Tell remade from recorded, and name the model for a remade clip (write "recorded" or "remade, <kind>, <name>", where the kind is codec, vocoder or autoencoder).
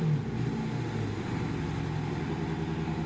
recorded